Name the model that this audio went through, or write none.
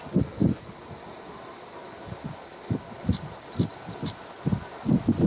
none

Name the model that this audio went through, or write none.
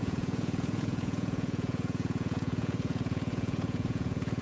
vocoder, Vocos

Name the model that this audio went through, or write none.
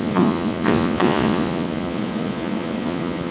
vocoder, Vocos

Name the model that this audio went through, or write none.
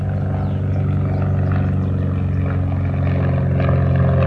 none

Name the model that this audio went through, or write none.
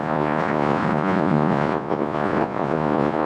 vocoder, Vocos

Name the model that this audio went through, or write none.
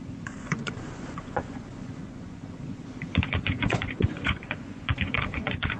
vocoder, Vocos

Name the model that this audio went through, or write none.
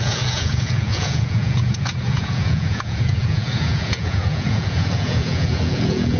vocoder, Vocos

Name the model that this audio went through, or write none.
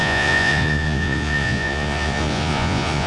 vocoder, Vocos